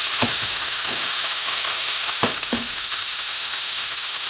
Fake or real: fake